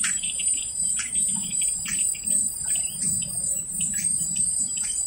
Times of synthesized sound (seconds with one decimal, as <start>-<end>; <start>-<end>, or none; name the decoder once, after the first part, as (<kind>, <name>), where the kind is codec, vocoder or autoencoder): 0.0-5.1 (vocoder, BigVGAN v2)